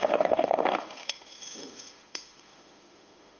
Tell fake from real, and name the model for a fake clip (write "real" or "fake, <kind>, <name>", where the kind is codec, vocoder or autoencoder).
fake, autoencoder, DAC-VAE